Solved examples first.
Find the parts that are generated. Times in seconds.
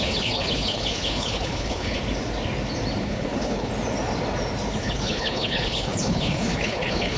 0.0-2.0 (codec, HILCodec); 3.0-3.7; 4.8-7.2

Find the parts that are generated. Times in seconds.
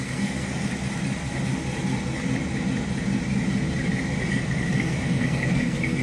0.0-0.7 (codec, SNAC); 4.3-6.0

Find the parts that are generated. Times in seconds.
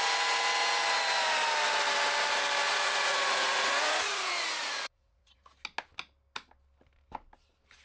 2.7-5.5 (vocoder, Vocos)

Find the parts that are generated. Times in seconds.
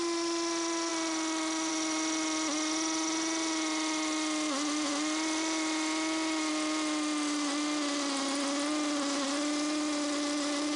none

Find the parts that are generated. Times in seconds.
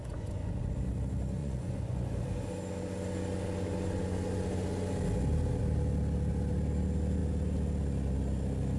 0.0-0.7 (vocoder, Vocos); 1.4-2.1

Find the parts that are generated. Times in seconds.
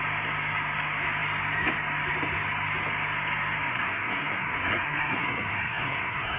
3.7-6.4 (codec, SNAC)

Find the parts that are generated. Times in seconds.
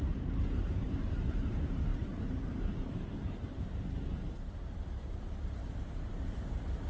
0.0-6.9 (vocoder, BigVGAN v2)